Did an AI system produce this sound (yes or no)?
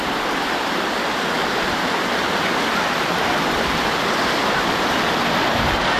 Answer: no